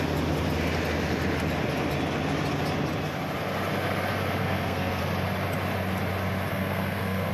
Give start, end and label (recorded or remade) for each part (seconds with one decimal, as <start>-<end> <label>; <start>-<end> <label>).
0.0-4.4 recorded; 4.4-5.0 remade; 5.0-6.5 recorded; 6.5-7.3 remade